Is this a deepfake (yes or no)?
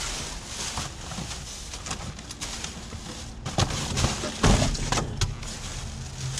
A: no